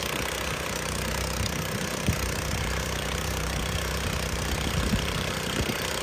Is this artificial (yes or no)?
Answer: yes